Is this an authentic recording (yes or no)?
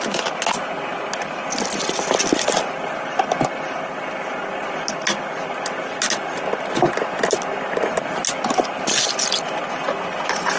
yes